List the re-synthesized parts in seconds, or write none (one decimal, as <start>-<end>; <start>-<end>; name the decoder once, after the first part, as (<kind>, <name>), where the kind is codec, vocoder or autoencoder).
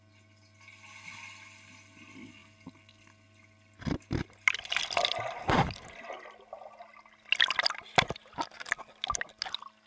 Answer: none